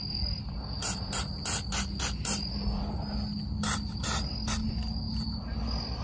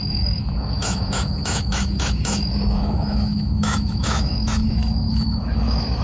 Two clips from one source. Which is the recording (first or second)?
first